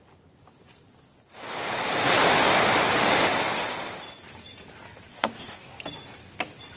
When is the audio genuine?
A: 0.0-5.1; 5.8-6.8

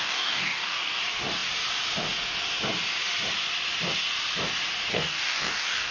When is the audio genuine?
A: 1.0-4.9

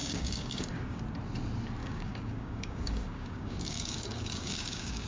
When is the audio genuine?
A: 1.0-1.8

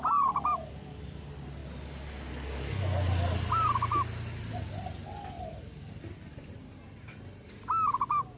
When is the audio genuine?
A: 0.0-8.4

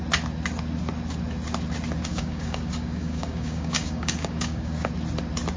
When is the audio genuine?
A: 0.0-2.1; 4.9-5.6

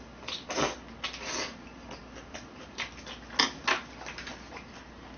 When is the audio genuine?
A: 0.0-5.2

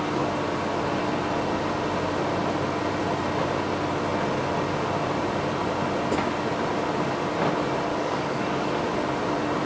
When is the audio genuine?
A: 0.0-7.9; 8.8-9.7

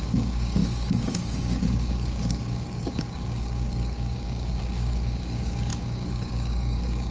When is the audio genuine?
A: none